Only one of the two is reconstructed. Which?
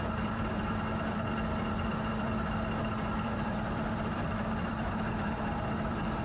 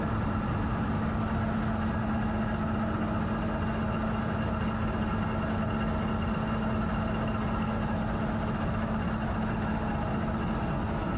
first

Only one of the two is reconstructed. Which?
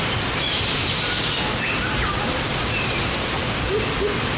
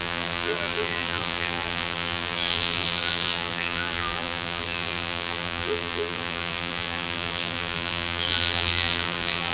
second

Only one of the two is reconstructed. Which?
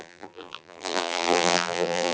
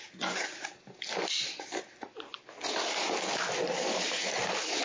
first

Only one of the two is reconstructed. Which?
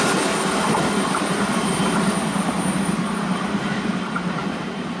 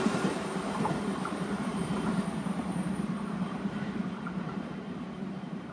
second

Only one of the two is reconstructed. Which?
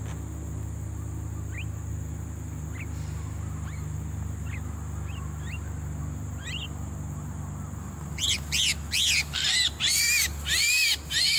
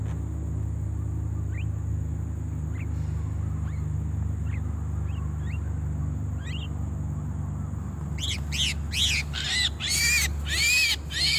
first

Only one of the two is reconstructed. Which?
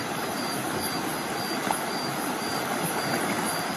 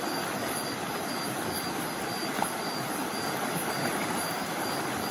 second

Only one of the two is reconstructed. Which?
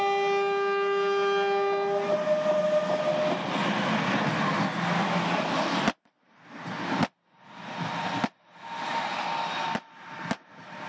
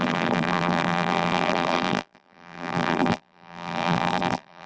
second